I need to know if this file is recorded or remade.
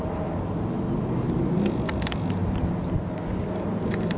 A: recorded